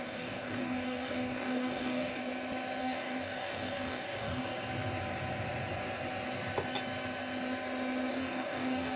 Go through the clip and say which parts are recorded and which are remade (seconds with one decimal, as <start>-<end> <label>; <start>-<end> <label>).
0.0-2.2 remade; 2.2-2.8 recorded; 2.8-4.5 remade; 4.5-8.1 recorded; 8.1-9.0 remade